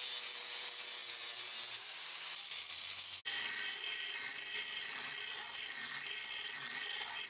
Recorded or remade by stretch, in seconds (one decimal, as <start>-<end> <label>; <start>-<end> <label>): 0.0-7.3 recorded